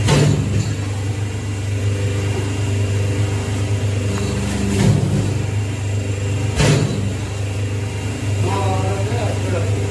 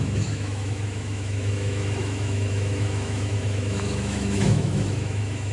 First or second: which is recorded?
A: first